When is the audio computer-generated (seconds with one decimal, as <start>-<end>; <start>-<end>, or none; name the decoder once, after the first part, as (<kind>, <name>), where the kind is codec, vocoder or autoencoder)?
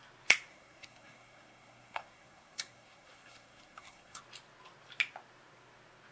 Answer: 0.5-4.2 (codec, SNAC)